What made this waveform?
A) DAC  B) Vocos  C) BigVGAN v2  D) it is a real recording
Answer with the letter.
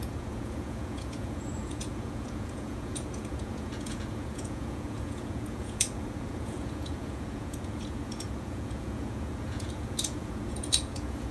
B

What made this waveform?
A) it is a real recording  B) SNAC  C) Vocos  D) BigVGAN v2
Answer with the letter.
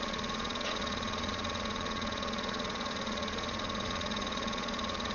C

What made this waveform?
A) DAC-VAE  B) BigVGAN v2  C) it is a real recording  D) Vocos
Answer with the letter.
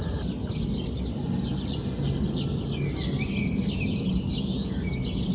C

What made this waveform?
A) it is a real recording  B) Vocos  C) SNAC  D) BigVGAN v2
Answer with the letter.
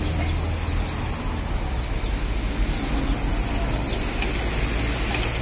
A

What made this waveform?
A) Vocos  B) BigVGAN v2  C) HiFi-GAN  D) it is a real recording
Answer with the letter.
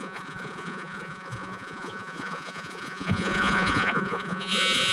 A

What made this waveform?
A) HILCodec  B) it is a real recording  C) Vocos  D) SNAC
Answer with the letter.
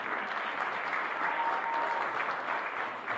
B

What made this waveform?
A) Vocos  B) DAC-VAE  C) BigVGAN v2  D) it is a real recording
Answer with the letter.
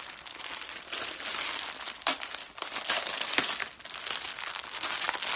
D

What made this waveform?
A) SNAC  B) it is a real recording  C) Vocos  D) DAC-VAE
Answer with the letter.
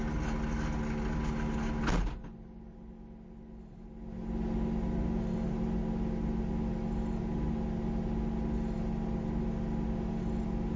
B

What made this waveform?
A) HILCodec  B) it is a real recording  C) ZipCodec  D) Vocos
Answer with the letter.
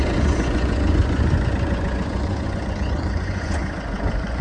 D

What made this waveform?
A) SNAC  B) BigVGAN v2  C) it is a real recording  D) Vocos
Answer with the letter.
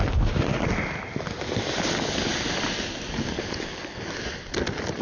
C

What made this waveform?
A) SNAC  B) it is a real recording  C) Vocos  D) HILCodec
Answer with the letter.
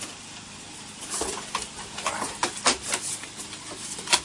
B